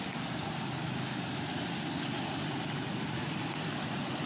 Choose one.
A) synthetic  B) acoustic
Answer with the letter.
B